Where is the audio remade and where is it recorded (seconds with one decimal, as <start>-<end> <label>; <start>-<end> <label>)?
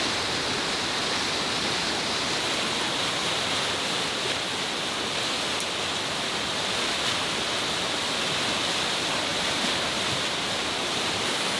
0.0-9.3 recorded; 9.3-11.0 remade; 11.0-11.6 recorded